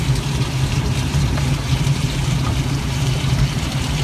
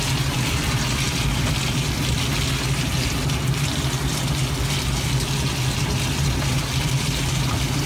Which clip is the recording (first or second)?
second